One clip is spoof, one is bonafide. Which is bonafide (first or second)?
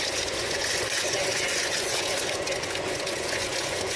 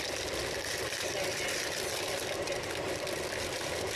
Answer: second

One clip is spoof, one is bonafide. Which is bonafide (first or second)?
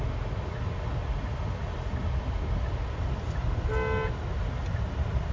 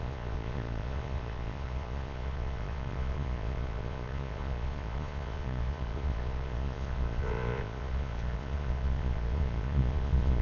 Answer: first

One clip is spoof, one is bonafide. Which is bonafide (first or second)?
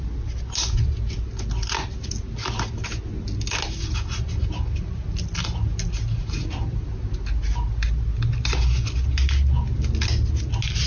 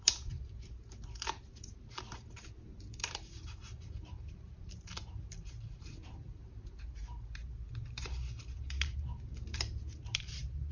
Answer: first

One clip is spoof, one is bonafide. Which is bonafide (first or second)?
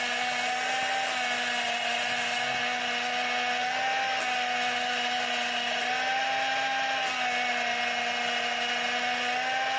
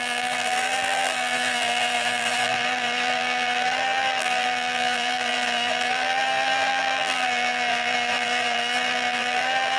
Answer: first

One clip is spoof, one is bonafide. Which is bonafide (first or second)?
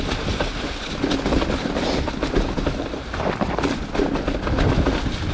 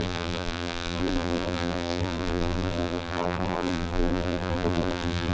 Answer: first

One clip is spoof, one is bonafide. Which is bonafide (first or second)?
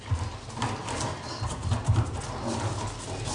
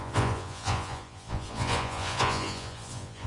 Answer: first